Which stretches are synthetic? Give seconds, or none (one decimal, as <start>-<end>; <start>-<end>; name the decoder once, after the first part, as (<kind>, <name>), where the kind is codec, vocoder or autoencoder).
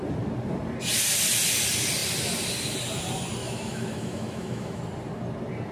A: 3.4-4.8 (autoencoder, DAC-VAE)